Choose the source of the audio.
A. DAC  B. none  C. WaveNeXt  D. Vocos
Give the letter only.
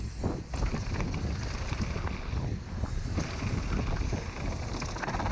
B